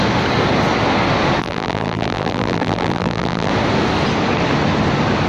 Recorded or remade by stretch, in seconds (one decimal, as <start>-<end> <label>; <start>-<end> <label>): 0.0-1.4 recorded; 1.4-3.5 remade; 3.5-5.3 recorded